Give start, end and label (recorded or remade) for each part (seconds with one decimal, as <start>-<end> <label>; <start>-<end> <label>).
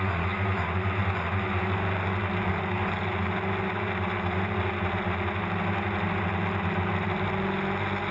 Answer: 0.0-8.1 recorded